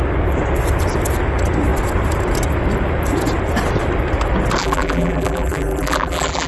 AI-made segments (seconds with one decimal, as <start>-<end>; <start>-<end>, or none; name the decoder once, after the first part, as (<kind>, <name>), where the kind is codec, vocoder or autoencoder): 4.6-6.5 (vocoder, BigVGAN v2)